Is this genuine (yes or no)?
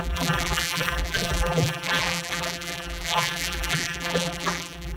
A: no